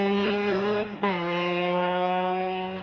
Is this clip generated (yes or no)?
yes